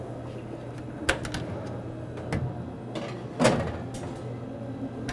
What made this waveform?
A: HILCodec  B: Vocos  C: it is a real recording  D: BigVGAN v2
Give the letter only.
C